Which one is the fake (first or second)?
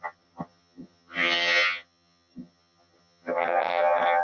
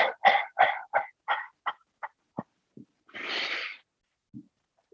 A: first